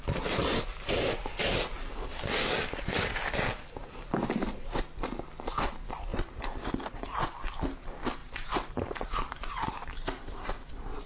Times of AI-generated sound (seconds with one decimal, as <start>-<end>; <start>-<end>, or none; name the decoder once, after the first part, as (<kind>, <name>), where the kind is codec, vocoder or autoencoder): 6.1-6.7 (vocoder, BigVGAN v2); 8.2-10.7